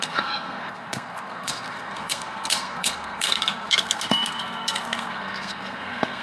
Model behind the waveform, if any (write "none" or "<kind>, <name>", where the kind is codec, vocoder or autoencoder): codec, SNAC